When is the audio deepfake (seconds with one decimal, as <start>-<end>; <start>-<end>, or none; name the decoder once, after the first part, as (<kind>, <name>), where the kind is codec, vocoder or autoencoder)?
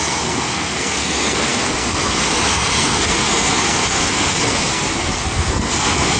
0.0-6.2 (codec, SNAC)